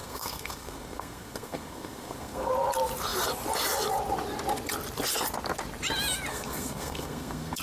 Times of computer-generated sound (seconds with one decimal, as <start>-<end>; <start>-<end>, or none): 0.0-2.5; 6.3-7.6